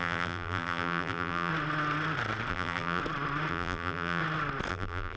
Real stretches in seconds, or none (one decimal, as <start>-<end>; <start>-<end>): 1.5-2.5; 3.0-3.5; 4.2-4.7